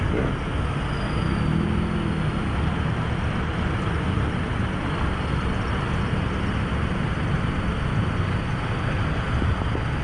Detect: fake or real real